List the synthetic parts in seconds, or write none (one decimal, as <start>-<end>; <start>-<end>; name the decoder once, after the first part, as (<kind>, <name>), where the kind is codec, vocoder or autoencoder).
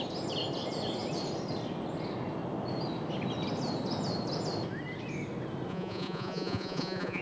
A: 5.7-7.2 (vocoder, Vocos)